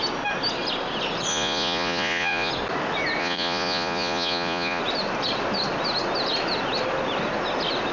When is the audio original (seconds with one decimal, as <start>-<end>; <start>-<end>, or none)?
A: 0.0-1.3; 2.5-3.2; 4.8-7.9